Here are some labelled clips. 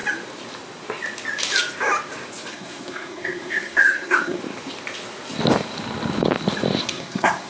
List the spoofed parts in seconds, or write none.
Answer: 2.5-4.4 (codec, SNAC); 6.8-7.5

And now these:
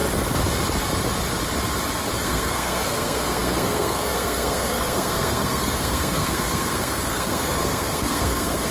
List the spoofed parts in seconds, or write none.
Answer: 2.2-8.7 (codec, SNAC)

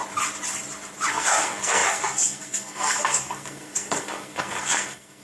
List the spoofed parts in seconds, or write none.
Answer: 1.1-5.2 (codec, SNAC)

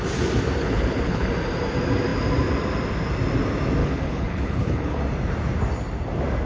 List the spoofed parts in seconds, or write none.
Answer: 0.6-1.3 (codec, HILCodec); 3.8-5.0